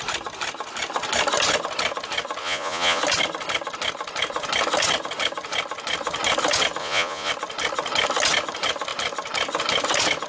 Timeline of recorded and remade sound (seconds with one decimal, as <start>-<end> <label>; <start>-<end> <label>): 0.0-2.4 recorded; 2.4-3.0 remade; 3.0-6.8 recorded; 6.8-7.3 remade; 7.3-10.3 recorded